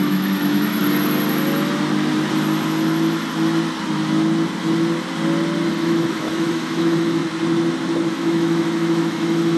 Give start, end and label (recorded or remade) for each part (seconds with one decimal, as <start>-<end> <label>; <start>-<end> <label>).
0.0-0.8 remade; 0.8-5.7 recorded; 5.7-7.2 remade; 7.2-8.1 recorded; 8.1-9.6 remade